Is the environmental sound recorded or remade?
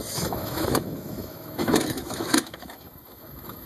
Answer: remade